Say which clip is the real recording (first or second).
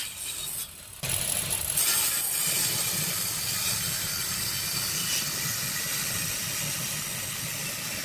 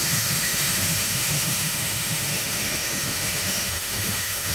first